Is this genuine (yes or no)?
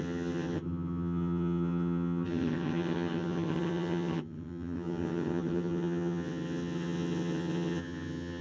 no